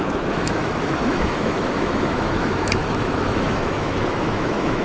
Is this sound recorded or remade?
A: remade